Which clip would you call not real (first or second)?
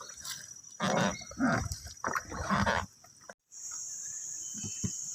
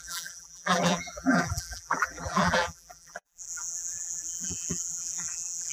second